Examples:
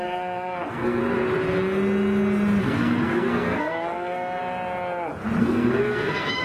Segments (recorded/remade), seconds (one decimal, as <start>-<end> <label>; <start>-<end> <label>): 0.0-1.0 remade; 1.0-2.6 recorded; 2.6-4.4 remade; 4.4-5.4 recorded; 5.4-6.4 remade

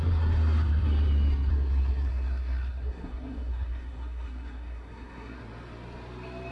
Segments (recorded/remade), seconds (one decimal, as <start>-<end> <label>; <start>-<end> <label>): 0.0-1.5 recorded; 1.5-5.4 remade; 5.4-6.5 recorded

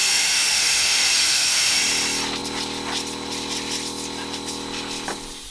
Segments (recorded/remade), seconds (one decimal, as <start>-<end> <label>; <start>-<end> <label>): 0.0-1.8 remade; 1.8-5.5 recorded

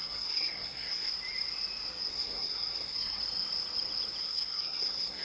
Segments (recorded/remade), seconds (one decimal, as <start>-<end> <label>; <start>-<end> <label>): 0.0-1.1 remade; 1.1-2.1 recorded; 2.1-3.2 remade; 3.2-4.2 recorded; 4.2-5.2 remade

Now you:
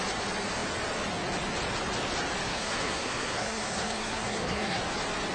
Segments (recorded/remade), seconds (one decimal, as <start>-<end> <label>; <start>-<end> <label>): 0.0-2.5 recorded; 2.5-4.8 remade; 4.8-5.3 recorded

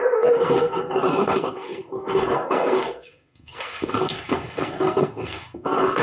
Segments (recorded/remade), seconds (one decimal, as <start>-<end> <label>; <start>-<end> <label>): 0.0-6.0 remade